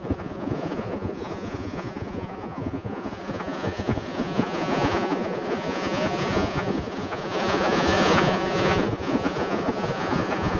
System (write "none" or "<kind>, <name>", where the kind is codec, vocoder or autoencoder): vocoder, Vocos